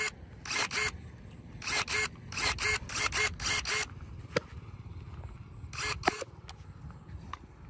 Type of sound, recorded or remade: recorded